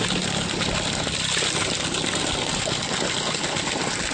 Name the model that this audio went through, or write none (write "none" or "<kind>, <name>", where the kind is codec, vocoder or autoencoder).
none